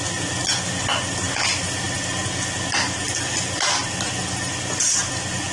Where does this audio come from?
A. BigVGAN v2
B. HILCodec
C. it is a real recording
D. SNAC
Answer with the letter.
C